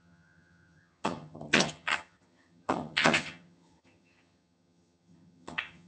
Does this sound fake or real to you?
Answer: fake